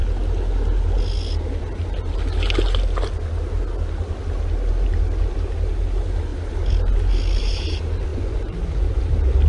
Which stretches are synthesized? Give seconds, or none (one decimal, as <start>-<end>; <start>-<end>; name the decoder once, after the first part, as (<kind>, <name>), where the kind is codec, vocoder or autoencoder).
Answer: 8.1-9.0 (vocoder, Vocos)